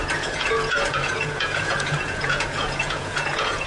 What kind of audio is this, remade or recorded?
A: remade